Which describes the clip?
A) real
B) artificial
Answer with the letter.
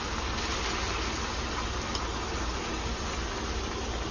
A